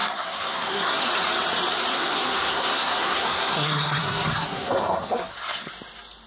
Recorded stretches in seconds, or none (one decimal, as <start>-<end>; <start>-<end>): 1.1-1.9; 5.7-6.3